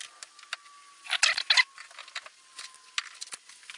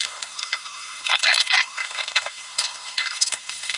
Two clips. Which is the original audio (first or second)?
first